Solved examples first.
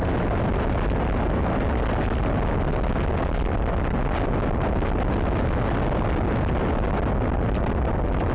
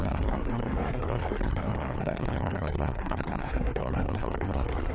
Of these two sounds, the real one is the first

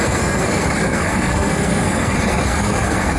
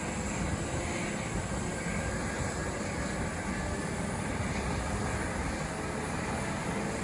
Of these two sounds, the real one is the second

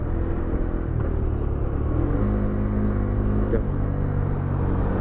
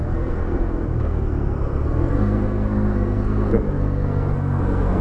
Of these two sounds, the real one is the first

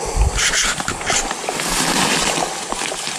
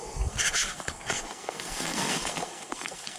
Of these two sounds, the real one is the first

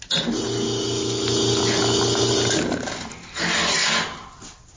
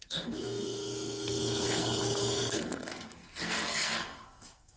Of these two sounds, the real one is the first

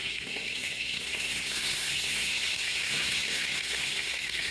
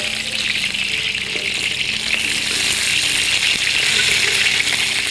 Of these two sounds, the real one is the second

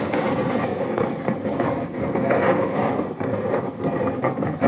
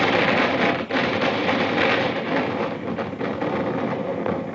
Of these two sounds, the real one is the second